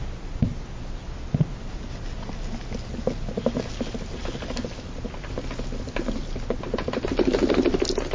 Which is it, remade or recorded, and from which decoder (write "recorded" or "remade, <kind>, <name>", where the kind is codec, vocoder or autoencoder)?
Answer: recorded